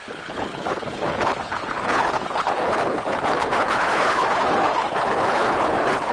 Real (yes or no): no